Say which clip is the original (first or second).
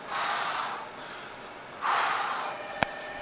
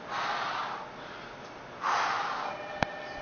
second